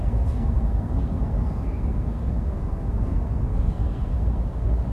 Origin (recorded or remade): remade